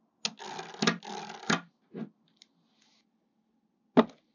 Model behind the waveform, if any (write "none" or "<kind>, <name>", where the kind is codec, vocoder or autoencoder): none